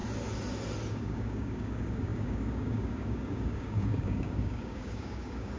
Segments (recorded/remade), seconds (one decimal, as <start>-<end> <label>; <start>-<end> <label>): 0.0-0.9 recorded; 0.9-5.6 remade